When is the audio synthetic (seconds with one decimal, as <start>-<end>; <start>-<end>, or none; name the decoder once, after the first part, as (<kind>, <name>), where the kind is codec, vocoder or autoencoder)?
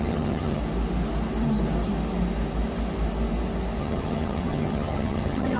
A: 0.0-0.6 (vocoder, HiFi-GAN); 3.8-5.6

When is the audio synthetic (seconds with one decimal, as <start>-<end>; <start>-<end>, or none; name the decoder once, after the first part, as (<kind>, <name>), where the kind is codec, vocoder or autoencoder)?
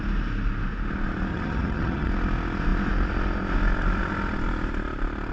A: 1.3-2.1 (vocoder, HiFi-GAN)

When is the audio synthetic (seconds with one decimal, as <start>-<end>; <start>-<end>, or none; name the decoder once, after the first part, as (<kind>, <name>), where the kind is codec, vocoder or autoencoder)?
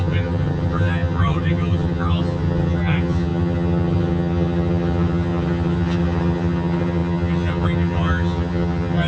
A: 0.0-9.1 (vocoder, HiFi-GAN)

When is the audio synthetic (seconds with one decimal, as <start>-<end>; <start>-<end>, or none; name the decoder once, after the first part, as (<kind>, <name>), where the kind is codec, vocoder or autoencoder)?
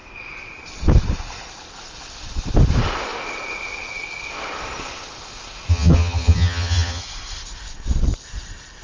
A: 5.7-7.0 (vocoder, HiFi-GAN)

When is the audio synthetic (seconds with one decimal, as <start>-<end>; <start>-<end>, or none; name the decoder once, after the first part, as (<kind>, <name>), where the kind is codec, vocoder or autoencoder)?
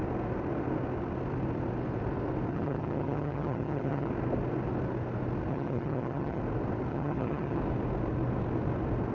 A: 2.5-4.1 (vocoder, HiFi-GAN); 5.5-6.4; 6.9-7.6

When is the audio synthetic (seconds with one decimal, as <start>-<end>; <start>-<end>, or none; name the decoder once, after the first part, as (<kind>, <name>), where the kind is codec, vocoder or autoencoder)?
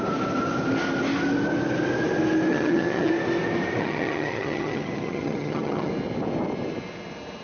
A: 2.5-3.1 (vocoder, HiFi-GAN); 3.8-5.9